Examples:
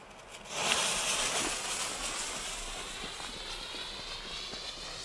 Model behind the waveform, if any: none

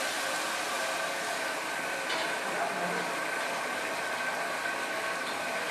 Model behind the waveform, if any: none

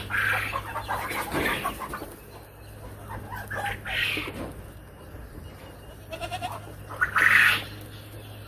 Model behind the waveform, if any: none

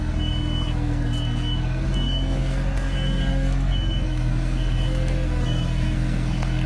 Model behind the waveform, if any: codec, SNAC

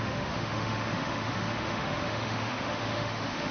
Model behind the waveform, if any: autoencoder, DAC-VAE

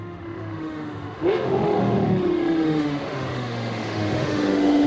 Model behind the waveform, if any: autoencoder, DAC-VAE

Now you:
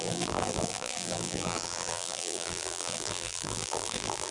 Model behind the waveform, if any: vocoder, BigVGAN v2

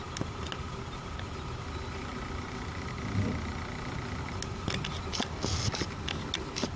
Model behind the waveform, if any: none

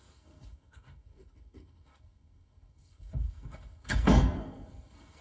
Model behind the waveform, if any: codec, SNAC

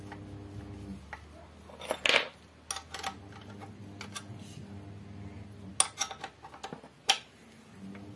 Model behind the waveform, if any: none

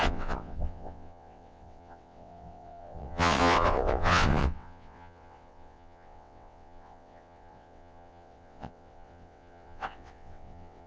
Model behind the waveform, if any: vocoder, WaveNeXt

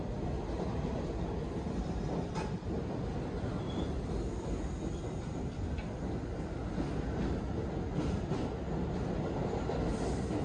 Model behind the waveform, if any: none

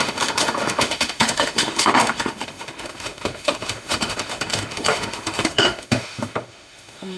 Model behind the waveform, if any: autoencoder, DAC-VAE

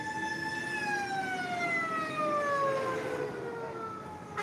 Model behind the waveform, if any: none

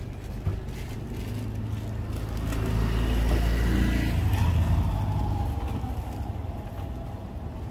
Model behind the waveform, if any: none